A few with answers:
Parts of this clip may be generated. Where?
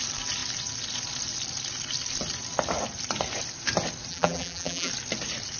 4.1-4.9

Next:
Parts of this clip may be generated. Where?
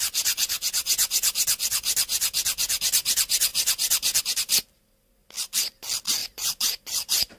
6.2-7.4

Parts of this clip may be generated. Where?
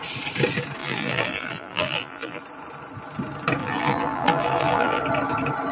0.8-2.4; 3.6-5.0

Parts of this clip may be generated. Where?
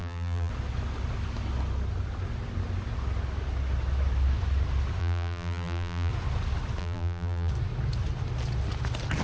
0.0-0.5; 5.0-6.1; 6.8-7.5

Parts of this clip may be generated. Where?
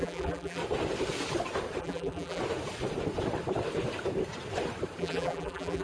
0.0-0.6; 1.8-2.4; 5.0-5.8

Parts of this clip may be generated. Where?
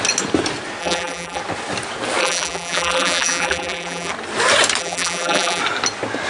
0.8-1.4; 2.2-4.1; 4.8-5.6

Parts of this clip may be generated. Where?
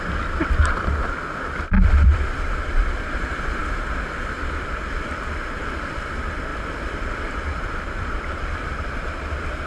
2.1-3.1; 6.5-8.2